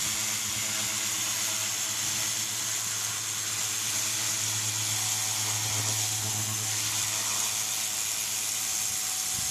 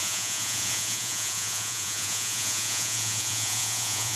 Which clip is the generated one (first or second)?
second